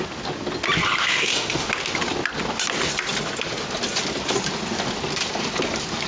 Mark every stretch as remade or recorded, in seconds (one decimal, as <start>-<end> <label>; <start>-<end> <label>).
0.0-1.0 recorded; 1.0-1.7 remade; 1.7-6.1 recorded